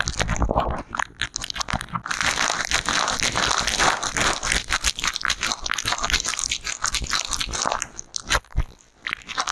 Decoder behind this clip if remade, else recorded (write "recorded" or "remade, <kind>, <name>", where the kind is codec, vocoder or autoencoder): recorded